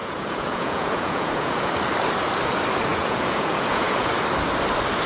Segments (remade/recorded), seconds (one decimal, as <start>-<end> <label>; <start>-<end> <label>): 0.0-1.7 remade; 1.7-2.9 recorded; 2.9-4.1 remade; 4.1-5.1 recorded